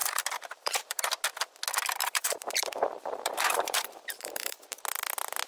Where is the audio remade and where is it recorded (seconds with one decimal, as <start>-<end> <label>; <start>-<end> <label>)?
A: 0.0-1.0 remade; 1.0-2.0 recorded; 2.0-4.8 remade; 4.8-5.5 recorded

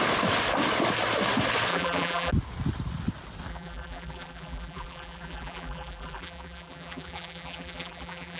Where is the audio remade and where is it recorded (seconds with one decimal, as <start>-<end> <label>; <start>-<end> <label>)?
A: 0.0-1.7 recorded; 1.7-2.3 remade; 2.3-3.5 recorded; 3.5-8.4 remade

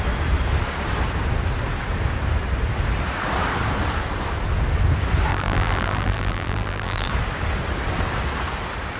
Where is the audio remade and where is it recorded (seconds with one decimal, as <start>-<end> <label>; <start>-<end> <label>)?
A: 0.0-5.3 recorded; 5.3-7.1 remade; 7.1-9.0 recorded

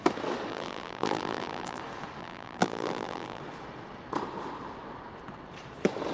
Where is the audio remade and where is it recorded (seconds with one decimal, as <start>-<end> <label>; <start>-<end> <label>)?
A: 0.0-0.5 recorded; 0.5-1.8 remade; 1.8-2.2 recorded; 2.2-3.4 remade; 3.4-6.1 recorded